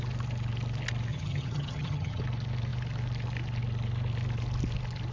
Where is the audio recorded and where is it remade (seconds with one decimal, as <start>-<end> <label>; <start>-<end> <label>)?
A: 0.0-1.1 recorded; 1.1-2.2 remade; 2.2-5.1 recorded